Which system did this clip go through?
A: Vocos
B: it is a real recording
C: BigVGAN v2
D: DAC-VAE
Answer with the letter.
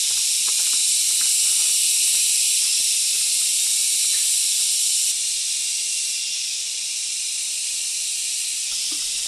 C